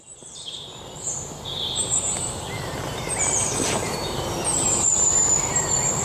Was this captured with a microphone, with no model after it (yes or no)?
no